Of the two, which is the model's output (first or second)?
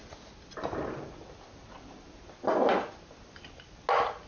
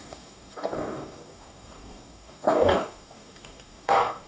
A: second